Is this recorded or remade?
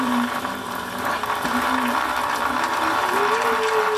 remade